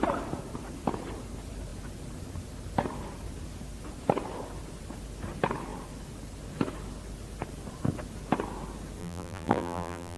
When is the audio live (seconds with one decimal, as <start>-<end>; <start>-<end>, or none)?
0.0-9.0